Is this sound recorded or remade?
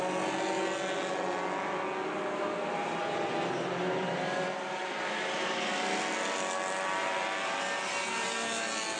recorded